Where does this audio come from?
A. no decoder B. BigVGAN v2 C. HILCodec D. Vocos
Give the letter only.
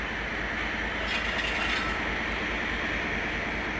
A